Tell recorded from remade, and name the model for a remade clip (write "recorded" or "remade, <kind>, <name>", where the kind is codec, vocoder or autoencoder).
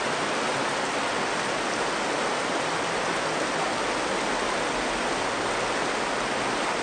recorded